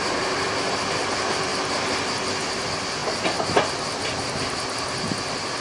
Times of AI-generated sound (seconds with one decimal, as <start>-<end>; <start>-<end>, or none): 0.0-1.5; 2.6-3.0; 4.1-5.6